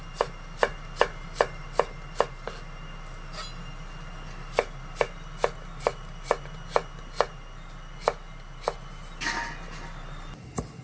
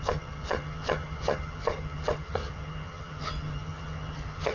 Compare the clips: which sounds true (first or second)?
first